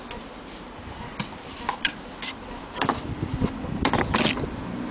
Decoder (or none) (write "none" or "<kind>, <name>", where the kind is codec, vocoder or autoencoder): none